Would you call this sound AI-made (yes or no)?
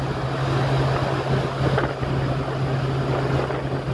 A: no